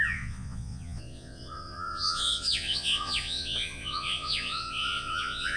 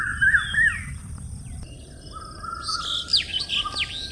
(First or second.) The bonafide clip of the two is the second